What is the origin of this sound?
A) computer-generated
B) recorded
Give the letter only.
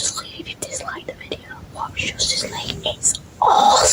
B